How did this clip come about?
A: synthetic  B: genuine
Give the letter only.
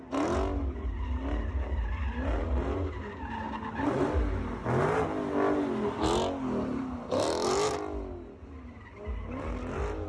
B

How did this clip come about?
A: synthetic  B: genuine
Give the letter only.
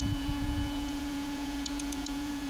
A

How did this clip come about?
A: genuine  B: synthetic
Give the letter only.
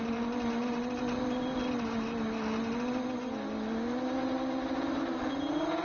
A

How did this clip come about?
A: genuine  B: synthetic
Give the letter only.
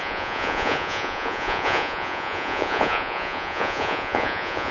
B